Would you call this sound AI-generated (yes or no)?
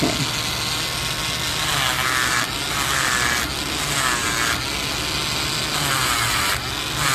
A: no